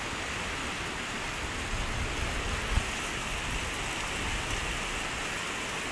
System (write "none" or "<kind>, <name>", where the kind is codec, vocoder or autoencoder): none